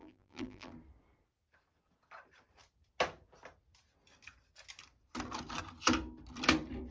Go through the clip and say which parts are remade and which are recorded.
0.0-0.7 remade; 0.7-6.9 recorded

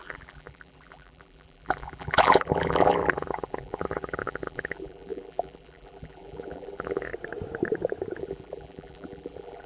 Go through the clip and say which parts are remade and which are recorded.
0.0-7.1 remade; 7.1-8.2 recorded; 8.2-9.7 remade